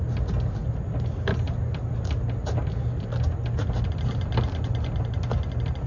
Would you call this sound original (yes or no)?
yes